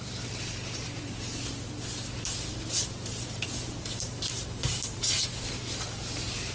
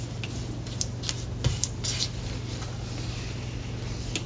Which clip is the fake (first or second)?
first